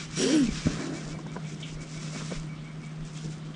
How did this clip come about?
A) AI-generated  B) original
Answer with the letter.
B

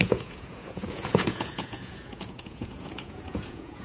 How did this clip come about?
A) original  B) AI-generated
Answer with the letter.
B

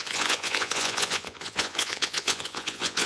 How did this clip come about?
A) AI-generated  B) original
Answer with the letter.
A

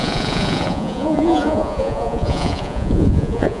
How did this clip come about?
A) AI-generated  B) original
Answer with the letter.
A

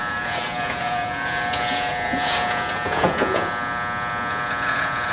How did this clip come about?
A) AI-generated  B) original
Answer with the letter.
A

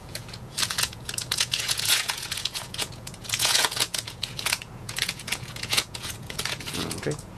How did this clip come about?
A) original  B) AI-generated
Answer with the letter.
B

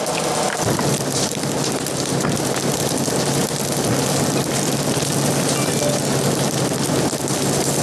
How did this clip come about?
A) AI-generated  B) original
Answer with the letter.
B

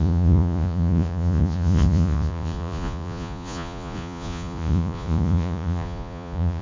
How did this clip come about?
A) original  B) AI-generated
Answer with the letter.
B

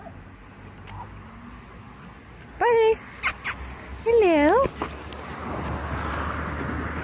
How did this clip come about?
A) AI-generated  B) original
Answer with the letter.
B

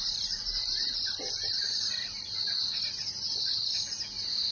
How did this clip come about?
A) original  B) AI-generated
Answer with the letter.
A